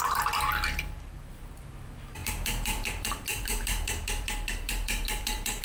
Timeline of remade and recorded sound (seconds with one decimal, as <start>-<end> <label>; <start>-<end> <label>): 0.0-5.6 remade